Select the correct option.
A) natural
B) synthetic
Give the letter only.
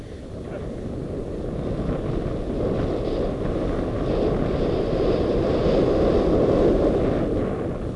A